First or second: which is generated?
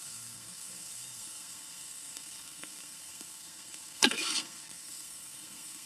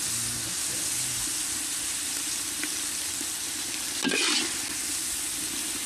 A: first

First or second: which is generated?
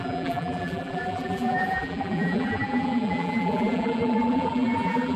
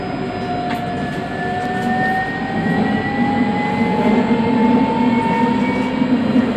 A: first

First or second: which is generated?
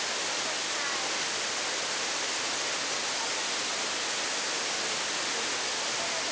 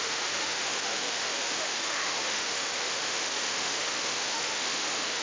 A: second